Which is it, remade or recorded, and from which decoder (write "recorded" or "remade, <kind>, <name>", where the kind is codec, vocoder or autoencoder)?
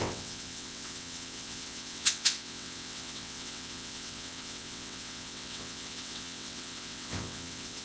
remade, vocoder, WaveNeXt